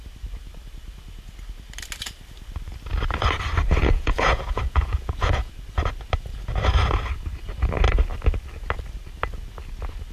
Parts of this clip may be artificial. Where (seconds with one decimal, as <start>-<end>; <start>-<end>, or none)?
3.8-5.5

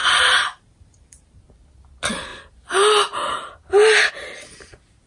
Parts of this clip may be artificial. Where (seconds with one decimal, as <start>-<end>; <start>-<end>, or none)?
0.0-1.4

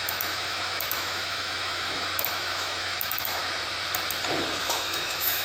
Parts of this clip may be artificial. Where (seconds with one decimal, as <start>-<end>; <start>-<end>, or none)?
0.0-3.4; 4.6-5.4

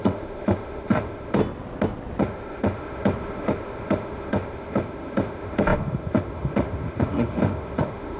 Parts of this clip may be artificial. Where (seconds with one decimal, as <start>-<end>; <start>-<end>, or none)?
0.0-1.4; 2.2-8.2

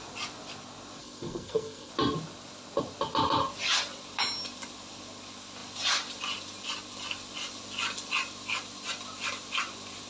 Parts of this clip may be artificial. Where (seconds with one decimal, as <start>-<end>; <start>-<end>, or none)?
1.0-1.9

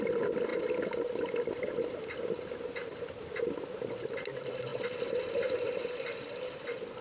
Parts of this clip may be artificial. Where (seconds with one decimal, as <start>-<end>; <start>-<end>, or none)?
none

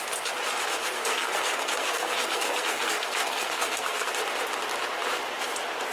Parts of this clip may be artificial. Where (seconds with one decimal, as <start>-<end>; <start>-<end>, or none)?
0.8-4.1